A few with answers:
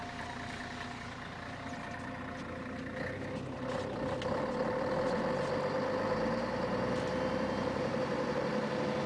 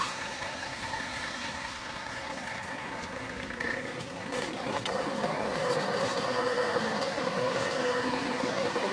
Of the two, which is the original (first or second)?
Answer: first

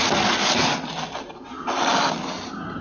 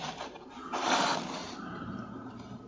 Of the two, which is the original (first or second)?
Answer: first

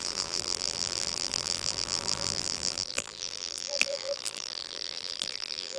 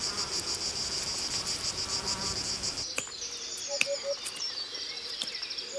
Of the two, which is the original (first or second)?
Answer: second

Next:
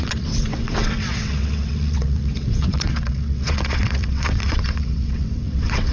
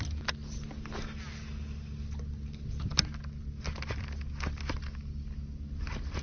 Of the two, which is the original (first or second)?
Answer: second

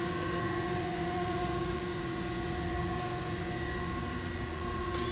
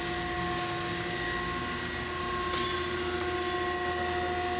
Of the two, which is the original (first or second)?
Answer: second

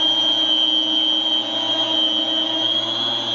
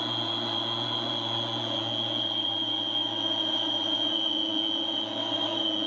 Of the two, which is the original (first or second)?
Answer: first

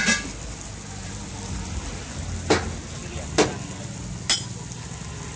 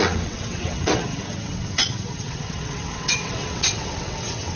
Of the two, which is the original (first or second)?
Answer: first